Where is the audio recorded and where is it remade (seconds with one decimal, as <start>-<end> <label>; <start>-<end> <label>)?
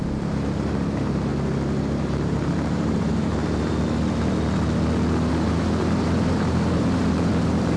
0.0-1.3 remade; 1.3-2.0 recorded; 2.0-3.3 remade; 3.3-5.3 recorded; 5.3-7.8 remade